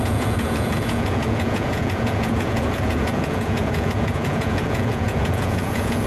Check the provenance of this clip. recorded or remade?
remade